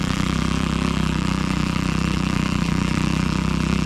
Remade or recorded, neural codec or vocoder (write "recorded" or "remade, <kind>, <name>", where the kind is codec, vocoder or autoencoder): remade, vocoder, BigVGAN v2